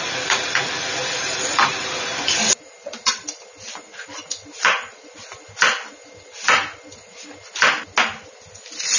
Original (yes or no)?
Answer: yes